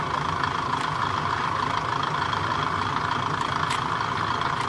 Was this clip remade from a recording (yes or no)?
no